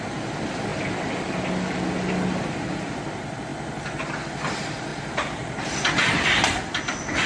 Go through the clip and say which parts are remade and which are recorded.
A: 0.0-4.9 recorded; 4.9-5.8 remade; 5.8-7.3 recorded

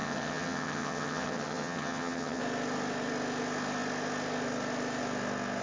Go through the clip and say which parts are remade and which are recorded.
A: 0.0-2.4 remade; 2.4-5.6 recorded

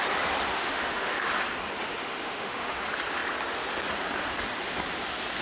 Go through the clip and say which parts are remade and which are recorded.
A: 0.0-0.5 recorded; 0.5-1.3 remade; 1.3-2.0 recorded; 2.0-2.8 remade; 2.8-5.4 recorded